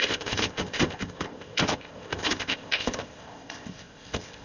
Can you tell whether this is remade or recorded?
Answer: remade